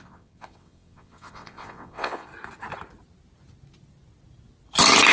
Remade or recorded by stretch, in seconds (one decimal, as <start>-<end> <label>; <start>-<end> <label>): 0.0-2.3 remade; 2.3-5.1 recorded